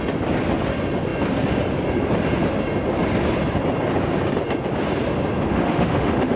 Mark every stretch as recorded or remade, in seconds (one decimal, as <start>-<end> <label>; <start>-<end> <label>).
0.0-5.5 recorded; 5.5-6.4 remade